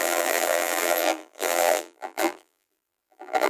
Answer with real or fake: fake